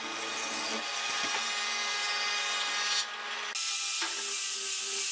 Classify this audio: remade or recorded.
recorded